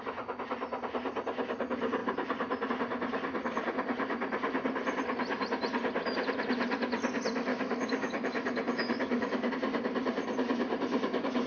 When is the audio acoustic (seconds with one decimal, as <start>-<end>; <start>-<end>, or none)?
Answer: 0.0-7.5; 9.5-11.5